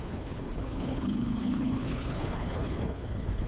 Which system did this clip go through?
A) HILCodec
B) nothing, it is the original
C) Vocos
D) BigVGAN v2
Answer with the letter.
A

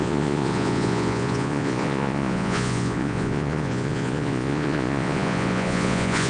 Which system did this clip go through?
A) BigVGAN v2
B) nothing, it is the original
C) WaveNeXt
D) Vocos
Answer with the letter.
D